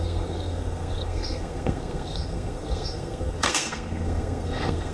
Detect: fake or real fake